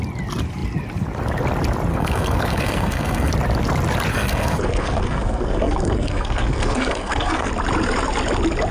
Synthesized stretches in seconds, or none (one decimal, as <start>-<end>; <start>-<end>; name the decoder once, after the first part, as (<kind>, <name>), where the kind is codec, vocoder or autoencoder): 1.9-3.3 (codec, SNAC); 4.1-7.5